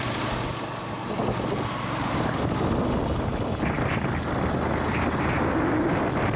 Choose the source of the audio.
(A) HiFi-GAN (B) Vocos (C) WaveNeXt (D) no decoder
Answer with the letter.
D